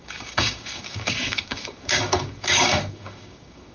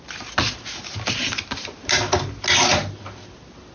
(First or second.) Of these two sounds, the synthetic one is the first